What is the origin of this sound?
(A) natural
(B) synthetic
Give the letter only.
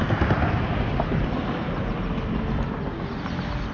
A